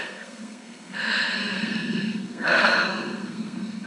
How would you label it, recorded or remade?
remade